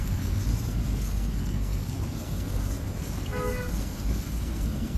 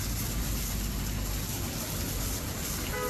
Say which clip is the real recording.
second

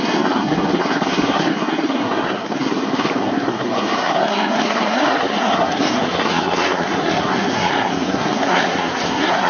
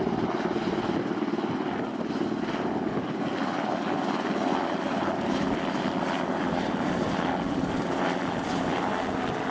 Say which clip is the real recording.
second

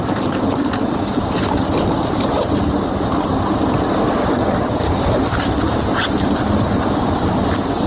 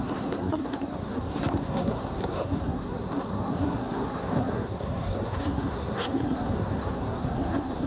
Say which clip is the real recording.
first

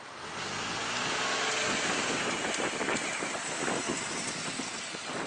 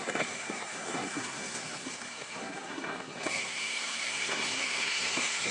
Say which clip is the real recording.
first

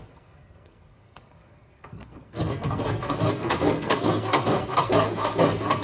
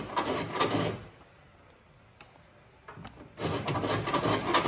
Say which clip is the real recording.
second